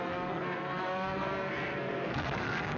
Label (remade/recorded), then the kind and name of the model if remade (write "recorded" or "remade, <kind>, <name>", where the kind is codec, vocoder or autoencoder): remade, codec, SNAC